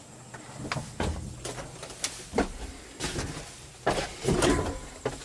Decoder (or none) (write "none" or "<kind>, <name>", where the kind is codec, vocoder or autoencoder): none